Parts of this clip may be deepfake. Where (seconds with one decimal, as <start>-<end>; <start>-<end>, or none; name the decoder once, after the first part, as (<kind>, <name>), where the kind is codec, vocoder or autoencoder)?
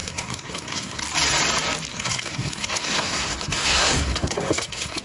0.0-1.0 (codec, SNAC); 1.9-5.0